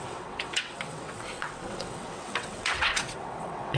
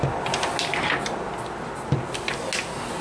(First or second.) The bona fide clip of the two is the second